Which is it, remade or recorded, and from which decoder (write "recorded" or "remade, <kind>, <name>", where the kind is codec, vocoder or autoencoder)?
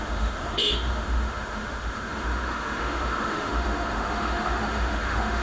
remade, autoencoder, DAC-VAE